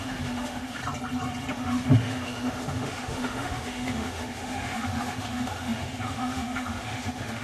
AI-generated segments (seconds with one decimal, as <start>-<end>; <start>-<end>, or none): 0.0-0.8; 1.5-7.4